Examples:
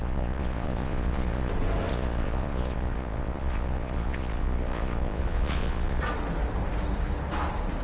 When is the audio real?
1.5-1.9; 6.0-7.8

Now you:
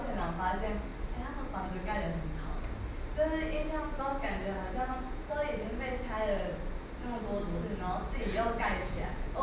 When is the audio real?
0.0-4.4; 5.3-8.2

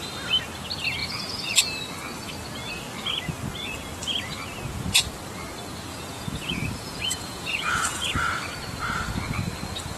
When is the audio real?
0.0-1.0; 1.6-5.9; 8.1-10.0

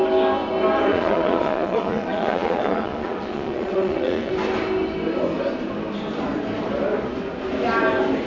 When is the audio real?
0.0-0.9; 4.3-8.3

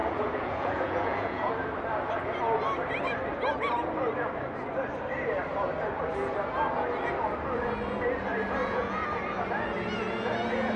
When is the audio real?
1.5-8.6; 9.1-10.8

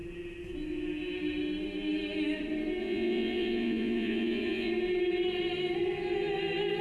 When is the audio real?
0.0-2.8; 4.7-6.8